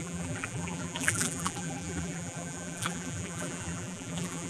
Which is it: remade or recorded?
remade